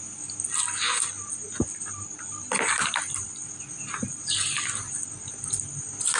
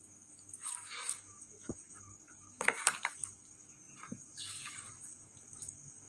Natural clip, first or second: first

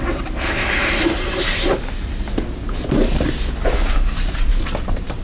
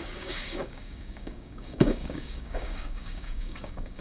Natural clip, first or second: first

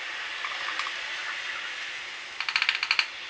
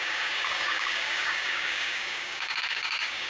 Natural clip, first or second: first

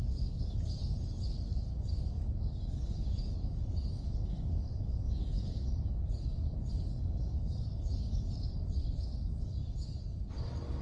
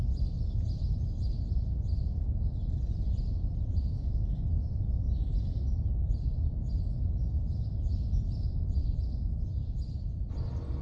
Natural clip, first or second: second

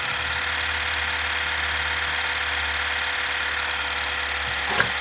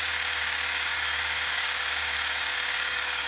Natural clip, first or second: first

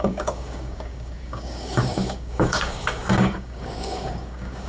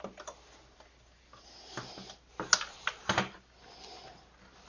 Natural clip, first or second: second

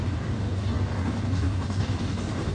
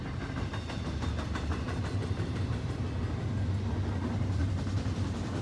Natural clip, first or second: second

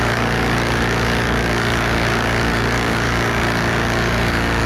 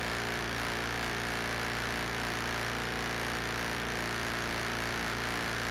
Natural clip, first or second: second